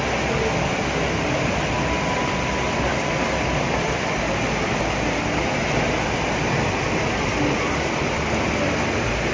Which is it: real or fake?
real